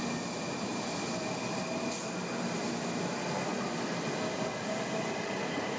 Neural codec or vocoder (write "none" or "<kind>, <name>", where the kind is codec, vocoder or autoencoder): none